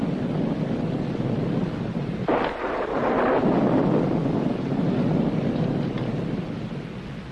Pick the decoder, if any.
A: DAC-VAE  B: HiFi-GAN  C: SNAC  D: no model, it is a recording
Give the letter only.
D